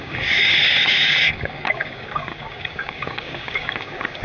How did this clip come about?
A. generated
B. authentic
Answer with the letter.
A